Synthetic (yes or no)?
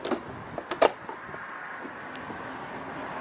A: no